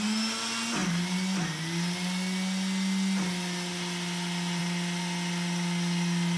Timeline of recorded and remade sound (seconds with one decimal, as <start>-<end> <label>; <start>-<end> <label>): 0.0-6.4 recorded

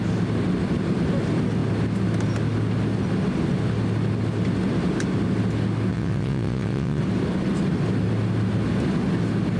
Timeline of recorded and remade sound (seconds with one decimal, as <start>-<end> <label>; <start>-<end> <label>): 0.0-5.9 recorded; 5.9-7.0 remade; 7.0-9.6 recorded